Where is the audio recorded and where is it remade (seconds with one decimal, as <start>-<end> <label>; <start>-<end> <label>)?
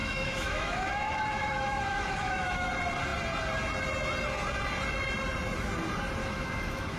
0.0-2.7 remade; 2.7-6.2 recorded; 6.2-7.0 remade